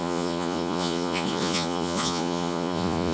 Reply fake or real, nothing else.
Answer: fake